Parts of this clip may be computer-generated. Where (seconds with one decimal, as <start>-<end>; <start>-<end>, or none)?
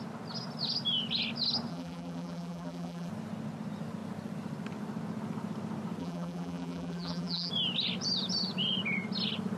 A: 1.7-3.1; 6.0-7.5